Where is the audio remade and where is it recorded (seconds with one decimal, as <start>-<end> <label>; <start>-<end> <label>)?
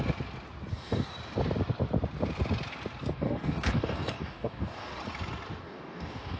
0.0-0.7 recorded; 0.7-1.1 remade; 1.1-3.1 recorded; 3.1-5.0 remade; 5.0-5.6 recorded; 5.6-6.4 remade